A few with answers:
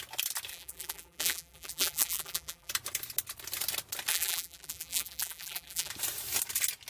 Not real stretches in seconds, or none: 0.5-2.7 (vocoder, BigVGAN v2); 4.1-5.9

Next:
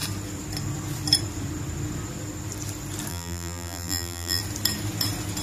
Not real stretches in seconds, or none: 3.1-4.4 (vocoder, BigVGAN v2)

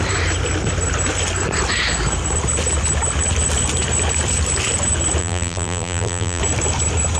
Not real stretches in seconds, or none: 5.2-6.4 (vocoder, BigVGAN v2)

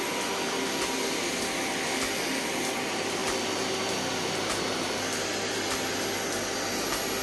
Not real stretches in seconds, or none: none

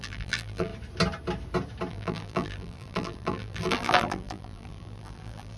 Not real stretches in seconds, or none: 0.0-0.7 (vocoder, BigVGAN v2); 1.9-5.6

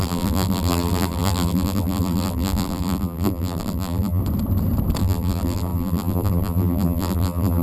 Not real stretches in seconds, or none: 0.0-4.2 (vocoder, BigVGAN v2); 5.0-7.6

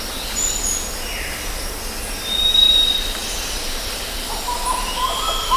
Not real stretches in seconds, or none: 3.2-5.0 (vocoder, BigVGAN v2)

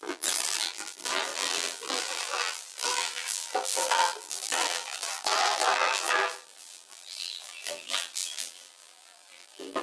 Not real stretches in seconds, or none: 0.0-9.8 (vocoder, BigVGAN v2)